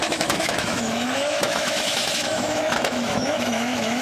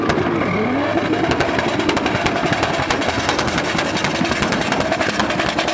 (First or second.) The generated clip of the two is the first